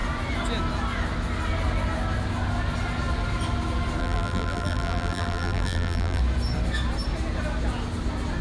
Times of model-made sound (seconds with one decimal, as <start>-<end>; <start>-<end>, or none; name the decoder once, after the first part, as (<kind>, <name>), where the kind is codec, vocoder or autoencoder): 4.0-6.2 (vocoder, BigVGAN v2)